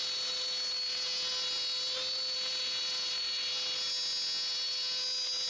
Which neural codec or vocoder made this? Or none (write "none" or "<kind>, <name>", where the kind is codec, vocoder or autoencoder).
none